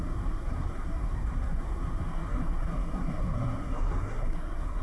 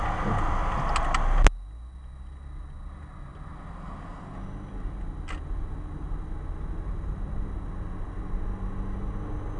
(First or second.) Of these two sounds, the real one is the second